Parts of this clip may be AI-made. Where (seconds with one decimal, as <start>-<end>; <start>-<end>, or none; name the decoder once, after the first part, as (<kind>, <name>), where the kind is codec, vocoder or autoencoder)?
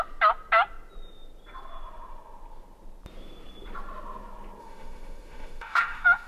4.6-6.3 (autoencoder, DAC-VAE)